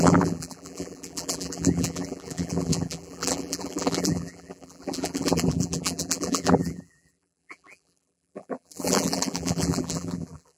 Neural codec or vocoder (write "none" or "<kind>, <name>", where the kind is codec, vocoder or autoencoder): vocoder, BigVGAN v2